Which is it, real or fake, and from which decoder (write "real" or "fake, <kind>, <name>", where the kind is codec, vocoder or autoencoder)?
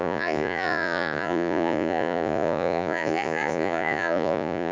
fake, vocoder, Vocos